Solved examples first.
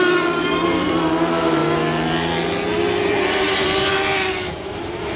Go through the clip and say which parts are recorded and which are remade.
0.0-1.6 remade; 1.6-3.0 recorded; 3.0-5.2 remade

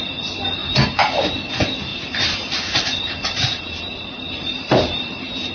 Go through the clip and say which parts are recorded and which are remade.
0.0-1.9 recorded; 1.9-5.5 remade

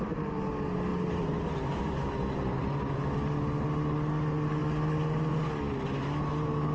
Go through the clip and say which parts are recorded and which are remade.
0.0-0.9 recorded; 0.9-3.1 remade; 3.1-6.7 recorded

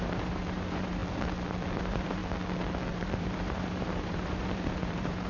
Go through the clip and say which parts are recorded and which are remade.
0.0-1.0 remade; 1.0-1.8 recorded; 1.8-2.2 remade; 2.2-2.9 recorded; 2.9-5.3 remade

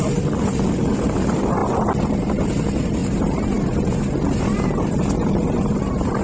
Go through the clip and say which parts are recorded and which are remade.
0.0-1.6 remade; 1.6-2.1 recorded; 2.1-6.2 remade

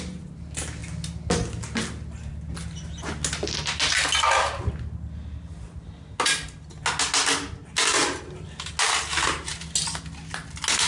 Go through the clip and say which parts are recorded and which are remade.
0.0-10.9 recorded

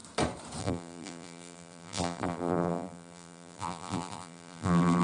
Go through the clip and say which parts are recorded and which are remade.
0.0-0.6 recorded; 0.6-5.0 remade